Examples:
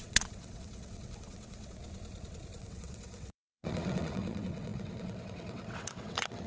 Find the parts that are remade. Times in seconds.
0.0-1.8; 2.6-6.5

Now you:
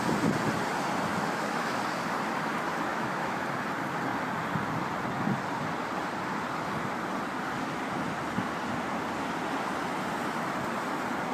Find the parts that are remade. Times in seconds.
1.1-1.8; 2.9-3.4

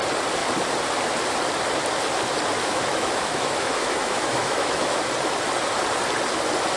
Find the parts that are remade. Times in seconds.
2.6-5.0

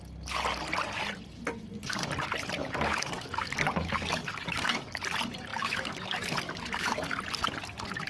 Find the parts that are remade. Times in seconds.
2.6-5.0; 5.5-7.2

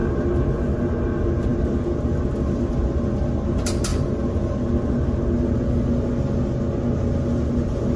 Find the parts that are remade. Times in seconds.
none

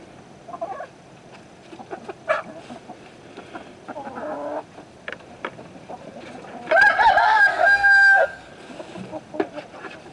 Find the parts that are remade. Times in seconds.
7.2-8.5

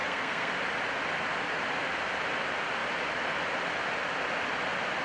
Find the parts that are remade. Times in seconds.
0.0-0.5

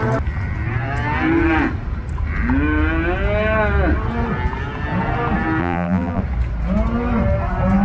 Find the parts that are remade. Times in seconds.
5.6-6.2